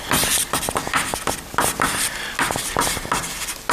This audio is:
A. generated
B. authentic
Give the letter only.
B